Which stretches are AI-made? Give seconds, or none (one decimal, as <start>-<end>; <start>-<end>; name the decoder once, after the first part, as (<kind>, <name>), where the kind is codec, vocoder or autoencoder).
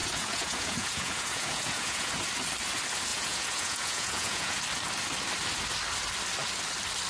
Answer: 0.0-2.1 (vocoder, Vocos); 3.1-4.6